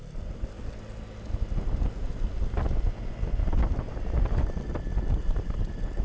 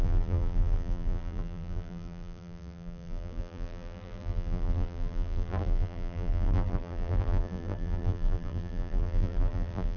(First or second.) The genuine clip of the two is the first